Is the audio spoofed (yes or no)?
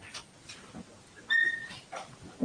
no